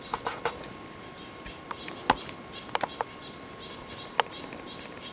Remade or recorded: recorded